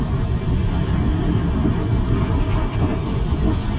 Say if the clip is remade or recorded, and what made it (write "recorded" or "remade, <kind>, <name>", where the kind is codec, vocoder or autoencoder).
recorded